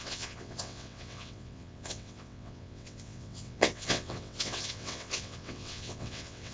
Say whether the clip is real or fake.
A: fake